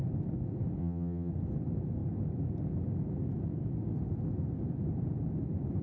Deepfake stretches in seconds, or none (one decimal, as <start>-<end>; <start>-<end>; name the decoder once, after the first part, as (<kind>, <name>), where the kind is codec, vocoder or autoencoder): 0.8-1.3 (vocoder, HiFi-GAN)